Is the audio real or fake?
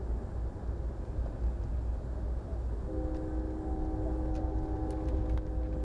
real